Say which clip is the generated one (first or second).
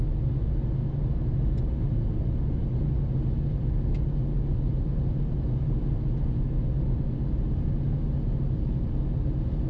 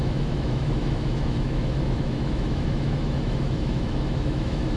second